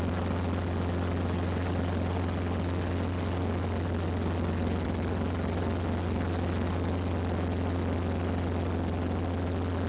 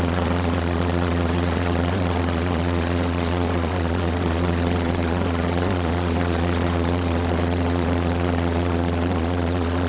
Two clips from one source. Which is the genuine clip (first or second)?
first